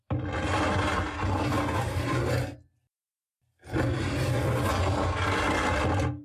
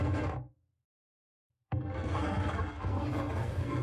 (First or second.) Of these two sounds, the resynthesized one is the second